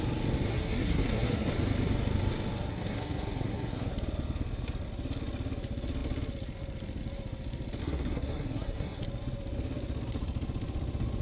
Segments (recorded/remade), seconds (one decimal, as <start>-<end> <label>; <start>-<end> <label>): 0.0-0.5 recorded; 0.5-1.5 remade; 1.5-2.7 recorded; 2.7-3.9 remade; 3.9-7.8 recorded; 7.8-9.0 remade; 9.0-11.2 recorded